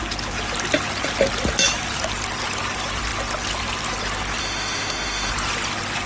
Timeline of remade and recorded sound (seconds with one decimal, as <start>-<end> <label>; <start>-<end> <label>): 0.0-4.4 recorded; 4.4-5.3 remade; 5.3-6.1 recorded